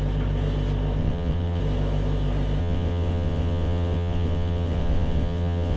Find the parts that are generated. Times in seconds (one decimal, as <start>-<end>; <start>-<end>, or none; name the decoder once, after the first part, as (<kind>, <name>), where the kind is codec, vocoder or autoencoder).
1.0-1.6 (vocoder, WaveNeXt); 2.6-5.8